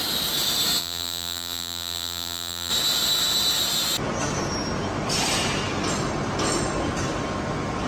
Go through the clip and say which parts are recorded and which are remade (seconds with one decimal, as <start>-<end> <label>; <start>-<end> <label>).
0.0-0.8 recorded; 0.8-2.7 remade; 2.7-7.9 recorded